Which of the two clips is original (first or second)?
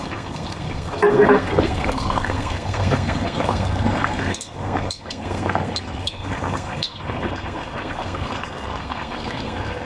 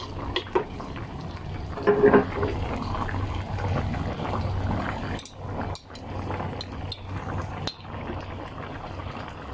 second